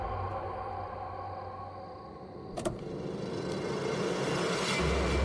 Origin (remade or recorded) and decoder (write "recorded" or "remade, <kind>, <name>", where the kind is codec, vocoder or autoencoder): recorded